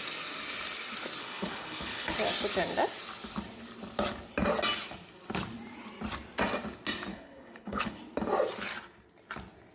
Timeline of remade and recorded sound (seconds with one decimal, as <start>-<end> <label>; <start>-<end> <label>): 0.0-1.2 recorded; 1.2-2.1 remade; 2.1-7.1 recorded; 7.1-8.0 remade; 8.0-9.7 recorded